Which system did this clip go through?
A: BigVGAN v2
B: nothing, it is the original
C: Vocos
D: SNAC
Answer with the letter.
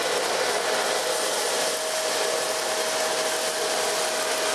B